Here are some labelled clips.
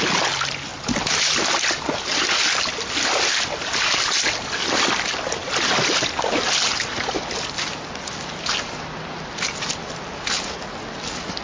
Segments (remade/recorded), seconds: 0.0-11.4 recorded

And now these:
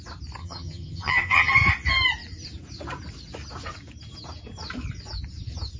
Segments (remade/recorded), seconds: 0.0-0.4 recorded; 0.4-1.5 remade; 1.5-5.8 recorded

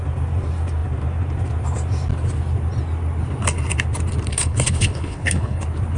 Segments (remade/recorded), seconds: 0.0-4.3 recorded; 4.3-5.6 remade; 5.6-6.0 recorded

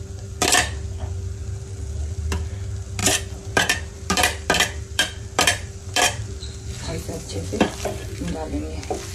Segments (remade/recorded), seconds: 0.0-3.0 recorded; 3.0-8.1 remade; 8.1-9.1 recorded

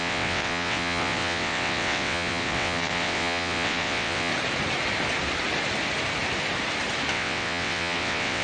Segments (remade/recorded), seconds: 0.0-4.3 remade; 4.3-7.1 recorded; 7.1-8.4 remade